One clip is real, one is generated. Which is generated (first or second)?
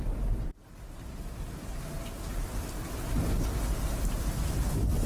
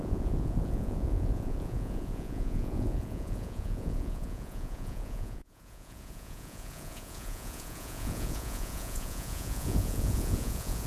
second